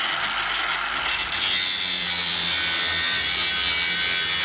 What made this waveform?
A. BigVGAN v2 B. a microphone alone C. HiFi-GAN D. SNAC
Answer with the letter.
B